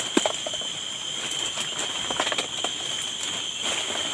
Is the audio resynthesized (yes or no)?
no